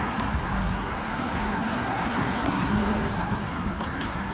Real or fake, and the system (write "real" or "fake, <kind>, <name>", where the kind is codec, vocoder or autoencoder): fake, codec, SNAC